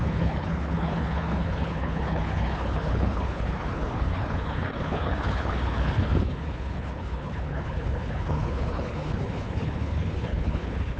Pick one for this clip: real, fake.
fake